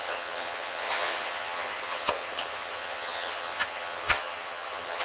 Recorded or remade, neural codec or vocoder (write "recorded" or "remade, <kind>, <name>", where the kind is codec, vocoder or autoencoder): remade, vocoder, HiFi-GAN